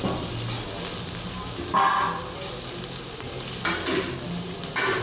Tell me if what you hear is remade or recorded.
recorded